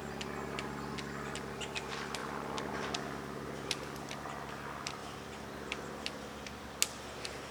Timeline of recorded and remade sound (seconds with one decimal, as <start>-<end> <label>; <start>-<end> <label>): 0.0-7.5 recorded